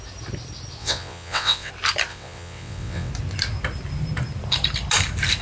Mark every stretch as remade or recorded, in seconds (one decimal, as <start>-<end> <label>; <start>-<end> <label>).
0.0-0.8 recorded; 0.8-1.7 remade; 1.7-2.1 recorded; 2.1-3.1 remade; 3.1-5.4 recorded